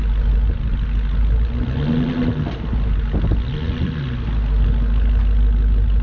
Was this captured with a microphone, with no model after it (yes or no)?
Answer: yes